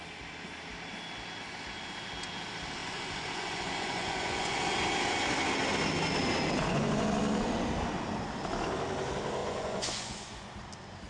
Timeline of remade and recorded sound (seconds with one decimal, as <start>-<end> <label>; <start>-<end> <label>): 0.0-2.8 recorded; 2.8-4.6 remade; 4.6-6.6 recorded; 6.6-7.1 remade; 7.1-9.4 recorded; 9.4-10.5 remade; 10.5-11.1 recorded